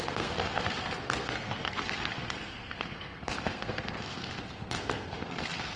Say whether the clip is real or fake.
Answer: fake